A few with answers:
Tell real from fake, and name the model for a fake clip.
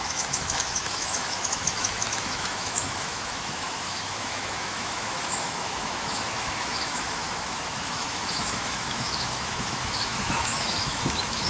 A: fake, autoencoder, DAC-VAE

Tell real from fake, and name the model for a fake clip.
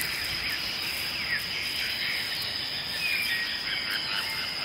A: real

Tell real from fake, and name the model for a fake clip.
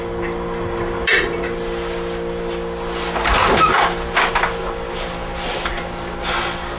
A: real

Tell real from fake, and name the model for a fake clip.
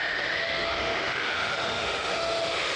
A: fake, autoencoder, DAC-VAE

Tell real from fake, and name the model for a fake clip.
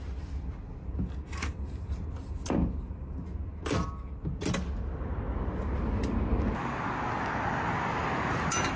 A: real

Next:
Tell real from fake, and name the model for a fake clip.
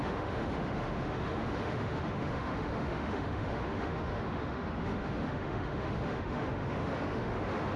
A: fake, autoencoder, DAC-VAE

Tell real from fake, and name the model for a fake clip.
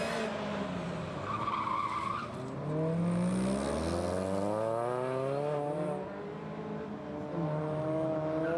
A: real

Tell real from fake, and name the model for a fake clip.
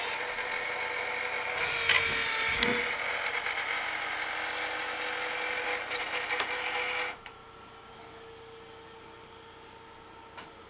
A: real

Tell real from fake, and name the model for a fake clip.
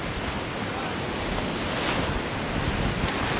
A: real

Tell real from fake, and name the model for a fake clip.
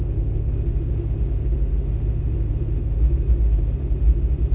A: fake, autoencoder, DAC-VAE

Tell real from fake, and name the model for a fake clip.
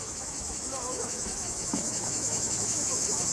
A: fake, autoencoder, DAC-VAE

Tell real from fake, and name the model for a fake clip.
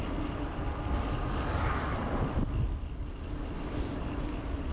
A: real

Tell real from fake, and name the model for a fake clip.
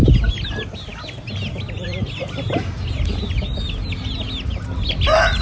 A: real